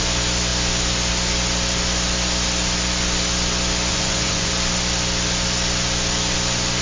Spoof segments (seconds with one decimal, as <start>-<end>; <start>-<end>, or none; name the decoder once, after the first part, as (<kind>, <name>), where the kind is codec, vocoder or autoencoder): 3.9-4.5 (vocoder, Vocos)

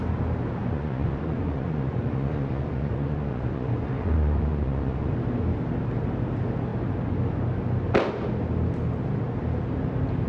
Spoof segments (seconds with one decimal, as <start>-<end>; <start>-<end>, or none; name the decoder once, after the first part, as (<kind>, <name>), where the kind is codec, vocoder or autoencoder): 0.6-5.1 (vocoder, Vocos)

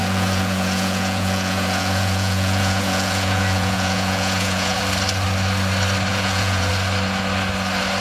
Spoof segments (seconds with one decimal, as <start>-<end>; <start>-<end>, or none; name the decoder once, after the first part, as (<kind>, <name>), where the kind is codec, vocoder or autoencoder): 0.0-4.8 (vocoder, Vocos); 6.1-6.7

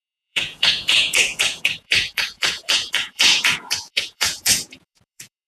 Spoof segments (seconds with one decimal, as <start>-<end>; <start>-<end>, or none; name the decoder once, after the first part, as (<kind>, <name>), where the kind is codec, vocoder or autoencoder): 0.0-5.5 (vocoder, Vocos)